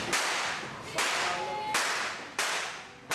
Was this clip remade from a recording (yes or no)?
no